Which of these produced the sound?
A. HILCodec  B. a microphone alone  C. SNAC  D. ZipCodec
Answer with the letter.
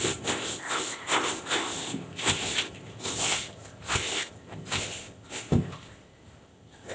D